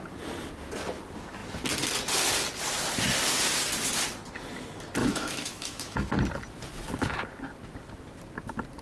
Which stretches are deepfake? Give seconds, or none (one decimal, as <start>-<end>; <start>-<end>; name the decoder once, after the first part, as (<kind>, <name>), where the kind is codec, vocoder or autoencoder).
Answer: 5.0-6.1 (autoencoder, DAC-VAE)